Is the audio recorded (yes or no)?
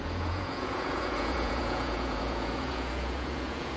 no